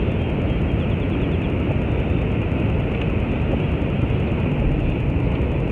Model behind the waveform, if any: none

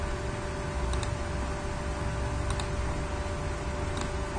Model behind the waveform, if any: none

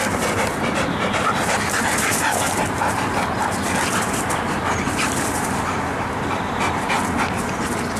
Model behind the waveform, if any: none